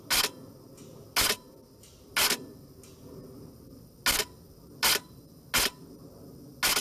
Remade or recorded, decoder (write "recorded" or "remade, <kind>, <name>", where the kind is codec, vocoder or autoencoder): recorded